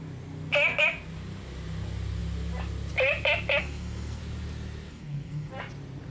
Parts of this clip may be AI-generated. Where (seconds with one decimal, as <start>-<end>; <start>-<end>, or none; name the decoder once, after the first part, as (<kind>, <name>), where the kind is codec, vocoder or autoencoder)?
3.6-4.2 (codec, SNAC); 4.9-5.5